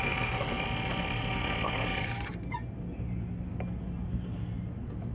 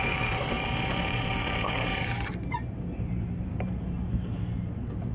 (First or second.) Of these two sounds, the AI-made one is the second